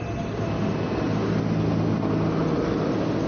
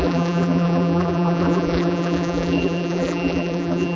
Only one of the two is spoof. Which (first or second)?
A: second